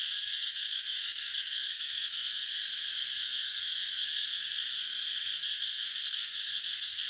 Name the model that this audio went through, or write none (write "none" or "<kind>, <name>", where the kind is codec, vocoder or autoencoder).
codec, SNAC